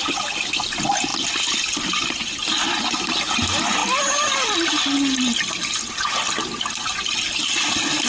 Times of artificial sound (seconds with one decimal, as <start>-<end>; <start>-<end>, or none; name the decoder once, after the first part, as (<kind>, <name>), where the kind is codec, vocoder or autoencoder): none